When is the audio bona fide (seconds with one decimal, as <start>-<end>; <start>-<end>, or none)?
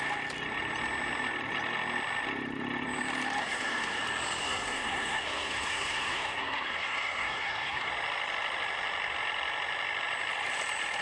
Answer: 0.0-3.4; 4.0-4.4; 7.9-11.0